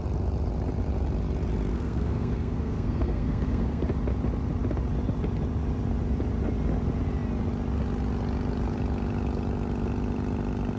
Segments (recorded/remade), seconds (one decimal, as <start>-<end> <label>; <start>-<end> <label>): 0.0-1.7 recorded; 1.7-3.8 remade; 3.8-10.8 recorded